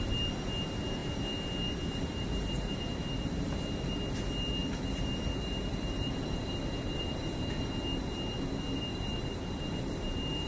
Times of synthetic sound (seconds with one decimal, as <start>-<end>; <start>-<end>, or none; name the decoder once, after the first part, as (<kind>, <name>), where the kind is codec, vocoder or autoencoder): 4.6-7.0 (vocoder, BigVGAN v2); 8.9-10.1